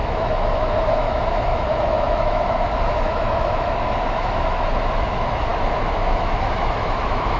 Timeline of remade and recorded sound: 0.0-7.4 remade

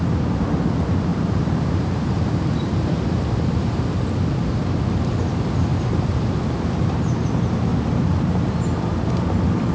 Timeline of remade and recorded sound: 0.0-1.1 recorded; 1.1-3.6 remade; 3.6-5.7 recorded; 5.7-7.3 remade; 7.3-7.7 recorded; 7.7-9.1 remade; 9.1-9.7 recorded

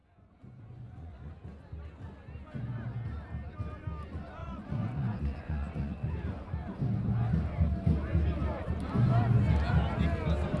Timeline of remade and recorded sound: 0.0-1.3 remade; 1.3-4.4 recorded; 4.4-6.1 remade; 6.1-10.6 recorded

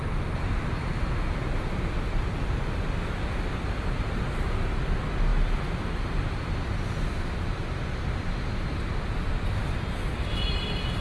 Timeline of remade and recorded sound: 0.0-11.0 recorded

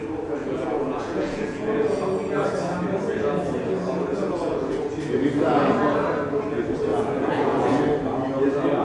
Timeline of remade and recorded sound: 0.0-0.4 recorded; 0.4-2.0 remade; 2.0-4.1 recorded; 4.1-4.8 remade; 4.8-6.9 recorded; 6.9-7.8 remade; 7.8-8.8 recorded

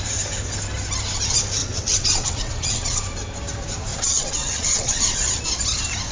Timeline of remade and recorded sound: 0.0-1.6 recorded; 1.6-3.0 remade; 3.0-3.9 recorded; 3.9-5.4 remade; 5.4-6.1 recorded